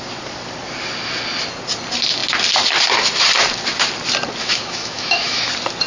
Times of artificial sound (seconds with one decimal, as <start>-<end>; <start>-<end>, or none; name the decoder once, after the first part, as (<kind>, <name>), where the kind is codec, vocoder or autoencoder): 4.4-5.4 (autoencoder, DAC-VAE)